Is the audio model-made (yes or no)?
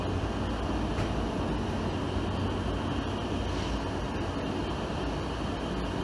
no